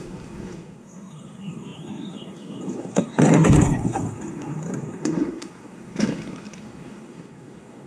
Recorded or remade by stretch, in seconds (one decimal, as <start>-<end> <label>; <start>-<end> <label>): 0.0-7.9 remade